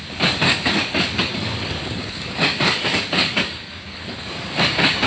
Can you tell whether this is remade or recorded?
remade